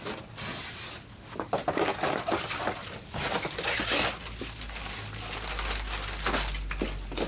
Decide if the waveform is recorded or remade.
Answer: recorded